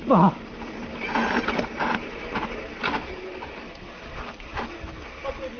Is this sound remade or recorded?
recorded